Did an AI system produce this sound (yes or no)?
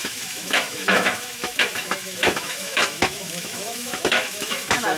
yes